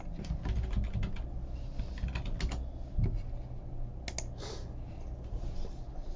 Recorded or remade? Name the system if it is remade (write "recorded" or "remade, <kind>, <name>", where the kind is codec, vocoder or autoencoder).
recorded